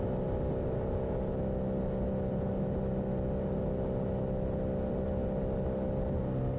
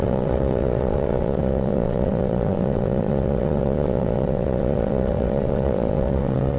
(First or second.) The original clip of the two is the first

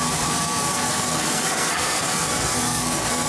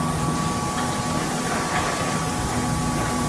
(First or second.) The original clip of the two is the second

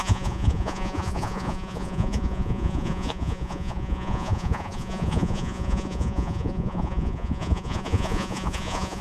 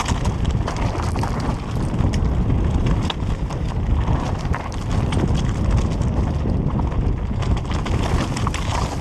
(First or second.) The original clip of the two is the second